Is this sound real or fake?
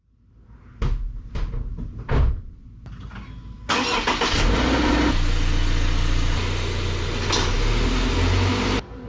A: real